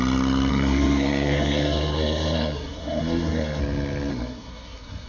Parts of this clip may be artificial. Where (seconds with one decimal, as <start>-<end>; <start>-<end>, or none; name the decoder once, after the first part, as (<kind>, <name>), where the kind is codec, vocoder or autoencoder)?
0.5-3.6 (codec, SNAC); 4.1-5.1